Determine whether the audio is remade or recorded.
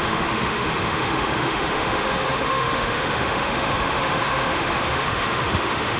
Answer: remade